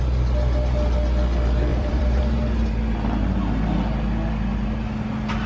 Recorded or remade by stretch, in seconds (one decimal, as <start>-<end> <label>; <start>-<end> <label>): 0.0-1.7 recorded; 1.7-2.2 remade; 2.2-5.5 recorded